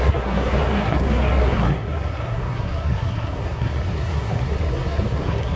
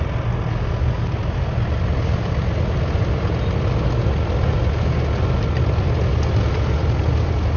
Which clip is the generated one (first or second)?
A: first